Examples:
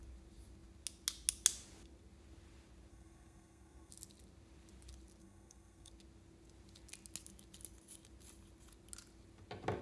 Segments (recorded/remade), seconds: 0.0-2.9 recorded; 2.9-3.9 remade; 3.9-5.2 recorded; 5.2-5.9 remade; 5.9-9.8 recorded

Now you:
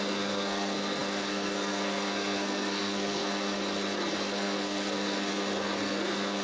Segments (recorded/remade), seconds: 0.0-3.6 remade; 3.6-4.3 recorded; 4.3-6.4 remade

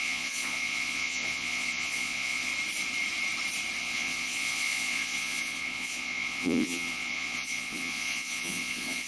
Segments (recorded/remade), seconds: 0.0-2.5 remade; 2.5-3.8 recorded; 3.8-9.1 remade

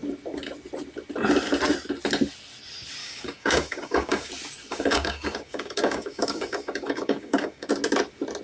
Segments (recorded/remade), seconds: 0.0-3.0 recorded; 3.0-4.3 remade; 4.3-4.7 recorded; 4.7-7.7 remade; 7.7-8.4 recorded

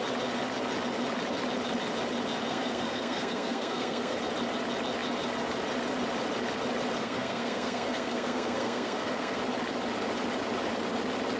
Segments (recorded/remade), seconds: 0.0-2.5 recorded; 2.5-4.2 remade; 4.2-7.0 recorded; 7.0-9.4 remade; 9.4-11.4 recorded

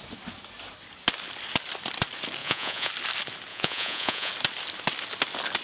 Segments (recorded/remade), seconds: 0.0-2.4 recorded; 2.4-2.9 remade; 2.9-3.5 recorded; 3.5-4.3 remade; 4.3-5.6 recorded

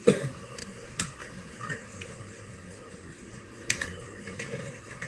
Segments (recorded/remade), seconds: 0.0-5.1 remade